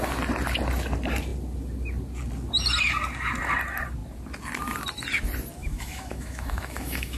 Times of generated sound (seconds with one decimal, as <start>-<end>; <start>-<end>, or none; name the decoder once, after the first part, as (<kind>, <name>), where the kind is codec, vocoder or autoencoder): 5.6-7.2 (autoencoder, DAC-VAE)